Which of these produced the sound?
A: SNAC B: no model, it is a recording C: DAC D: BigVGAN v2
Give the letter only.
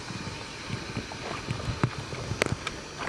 B